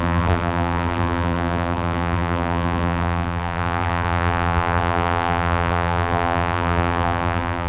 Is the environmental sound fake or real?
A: fake